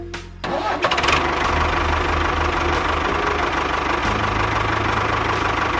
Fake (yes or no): no